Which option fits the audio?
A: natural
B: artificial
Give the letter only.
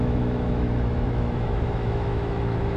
B